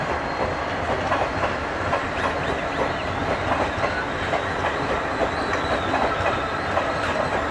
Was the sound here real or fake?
real